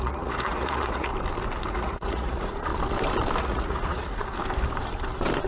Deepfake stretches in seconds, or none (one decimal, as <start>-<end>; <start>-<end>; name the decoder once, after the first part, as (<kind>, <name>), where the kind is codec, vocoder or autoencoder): 0.0-1.1 (vocoder, Vocos); 1.7-2.7; 3.4-4.2